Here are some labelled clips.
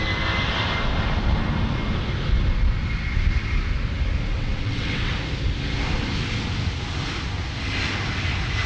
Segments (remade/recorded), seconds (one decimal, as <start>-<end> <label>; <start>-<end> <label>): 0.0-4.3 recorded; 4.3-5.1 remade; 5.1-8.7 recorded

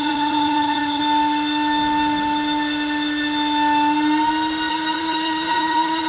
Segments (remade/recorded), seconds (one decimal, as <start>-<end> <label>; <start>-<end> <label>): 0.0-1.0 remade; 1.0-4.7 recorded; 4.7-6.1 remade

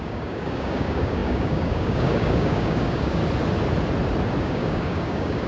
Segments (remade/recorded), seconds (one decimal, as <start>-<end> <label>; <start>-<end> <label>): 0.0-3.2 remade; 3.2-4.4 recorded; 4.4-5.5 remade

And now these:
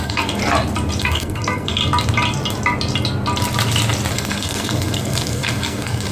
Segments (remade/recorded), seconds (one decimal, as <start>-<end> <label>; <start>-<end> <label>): 0.0-0.4 remade; 0.4-1.0 recorded; 1.0-1.8 remade; 1.8-4.1 recorded; 4.1-6.1 remade

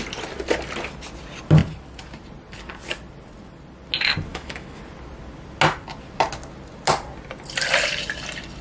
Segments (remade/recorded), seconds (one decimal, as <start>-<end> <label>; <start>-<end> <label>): 0.0-4.3 recorded; 4.3-4.8 remade; 4.8-8.6 recorded

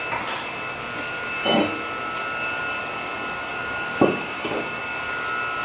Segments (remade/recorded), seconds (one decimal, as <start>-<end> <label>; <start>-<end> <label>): 0.0-3.5 recorded; 3.5-4.8 remade; 4.8-5.6 recorded

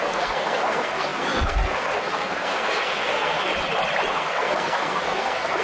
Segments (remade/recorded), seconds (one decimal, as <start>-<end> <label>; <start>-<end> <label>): 0.0-3.5 remade; 3.5-4.1 recorded; 4.1-5.6 remade